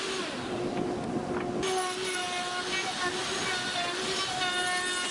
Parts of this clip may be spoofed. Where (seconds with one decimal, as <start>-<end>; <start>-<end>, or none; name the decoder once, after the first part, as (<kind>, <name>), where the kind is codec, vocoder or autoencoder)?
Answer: none

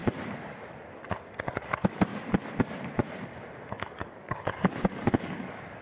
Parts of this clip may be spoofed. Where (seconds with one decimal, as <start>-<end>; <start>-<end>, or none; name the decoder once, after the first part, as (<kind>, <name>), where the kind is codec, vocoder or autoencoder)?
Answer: 1.5-2.1 (codec, DAC); 3.7-5.8

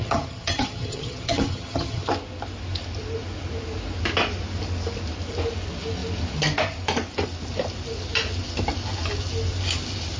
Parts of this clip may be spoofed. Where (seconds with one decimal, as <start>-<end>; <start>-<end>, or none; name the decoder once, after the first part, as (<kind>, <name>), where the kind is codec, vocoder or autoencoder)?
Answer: 0.0-2.1 (vocoder, HiFi-GAN)

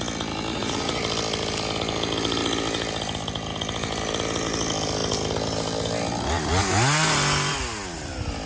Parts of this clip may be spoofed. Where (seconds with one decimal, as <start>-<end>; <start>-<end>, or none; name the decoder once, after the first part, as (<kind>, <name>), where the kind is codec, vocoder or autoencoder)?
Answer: 0.5-1.0 (vocoder, Vocos)